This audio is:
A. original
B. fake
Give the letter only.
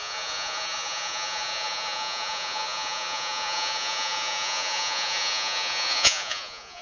B